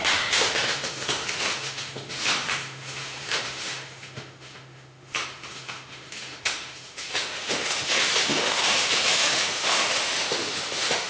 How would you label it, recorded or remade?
remade